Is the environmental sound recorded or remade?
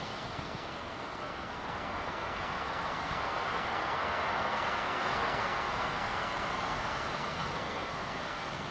remade